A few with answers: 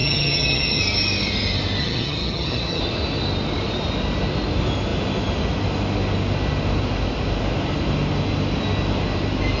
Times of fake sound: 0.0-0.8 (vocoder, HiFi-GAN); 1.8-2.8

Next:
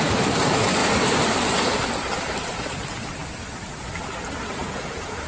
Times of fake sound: 4.6-5.3 (vocoder, Vocos)

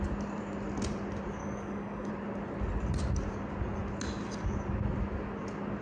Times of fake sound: 1.4-2.1 (codec, DAC)

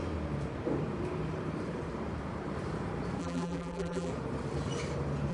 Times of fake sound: 3.2-4.1 (vocoder, BigVGAN v2)

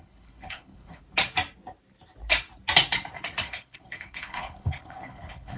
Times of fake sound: 0.0-1.0 (codec, HILCodec); 3.4-5.6

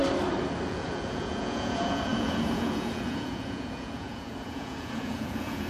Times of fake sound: 0.7-5.7 (vocoder, Vocos)